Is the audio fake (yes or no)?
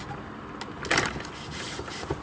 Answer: no